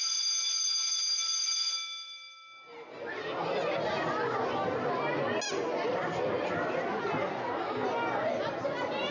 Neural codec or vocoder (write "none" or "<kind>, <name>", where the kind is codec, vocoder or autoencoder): none